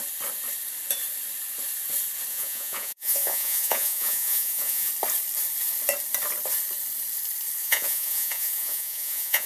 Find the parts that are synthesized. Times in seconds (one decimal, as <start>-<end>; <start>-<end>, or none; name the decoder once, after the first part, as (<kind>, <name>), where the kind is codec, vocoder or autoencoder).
2.3-4.9 (vocoder, Vocos); 7.6-9.5